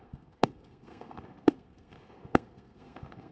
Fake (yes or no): yes